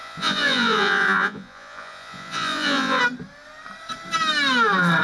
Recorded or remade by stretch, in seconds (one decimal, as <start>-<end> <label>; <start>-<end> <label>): 0.0-3.0 remade; 3.0-5.0 recorded